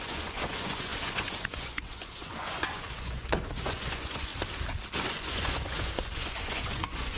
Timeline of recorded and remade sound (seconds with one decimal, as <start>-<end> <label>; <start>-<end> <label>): 0.0-4.3 remade; 4.3-5.0 recorded; 5.0-7.2 remade